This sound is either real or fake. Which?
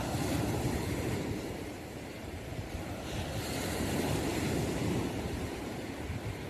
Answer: fake